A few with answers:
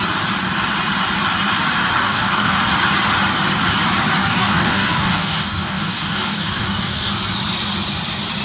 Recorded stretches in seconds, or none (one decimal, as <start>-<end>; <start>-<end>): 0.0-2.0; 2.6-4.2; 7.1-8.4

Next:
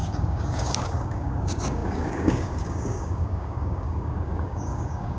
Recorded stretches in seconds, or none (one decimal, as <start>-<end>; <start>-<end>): none

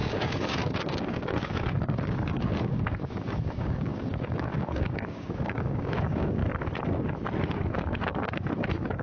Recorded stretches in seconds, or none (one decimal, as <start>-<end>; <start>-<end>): 6.4-7.5

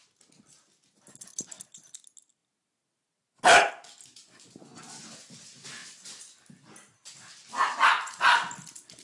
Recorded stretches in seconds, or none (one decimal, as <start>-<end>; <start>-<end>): 0.0-9.0

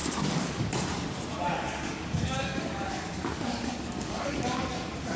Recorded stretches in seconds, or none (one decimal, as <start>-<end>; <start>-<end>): 0.7-1.5; 4.6-5.2

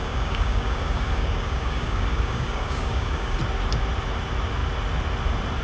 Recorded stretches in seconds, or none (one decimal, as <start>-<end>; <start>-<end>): 3.4-5.6

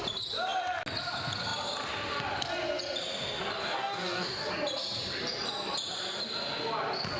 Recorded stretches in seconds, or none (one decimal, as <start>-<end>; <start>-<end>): 0.0-3.6; 4.5-7.2

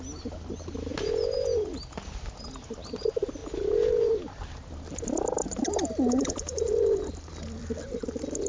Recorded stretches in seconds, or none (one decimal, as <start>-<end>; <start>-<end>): 0.0-8.5